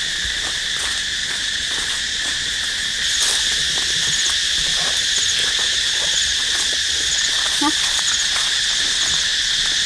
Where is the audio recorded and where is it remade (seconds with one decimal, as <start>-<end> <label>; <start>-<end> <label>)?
0.0-1.2 recorded; 1.2-2.5 remade; 2.5-5.4 recorded; 5.4-8.6 remade; 8.6-9.9 recorded